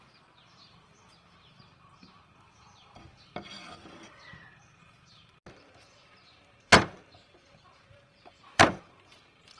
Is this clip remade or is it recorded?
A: remade